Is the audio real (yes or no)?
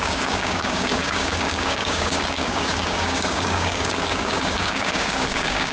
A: no